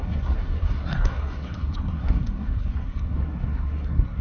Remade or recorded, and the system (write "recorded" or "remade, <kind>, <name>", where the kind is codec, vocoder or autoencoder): remade, codec, SNAC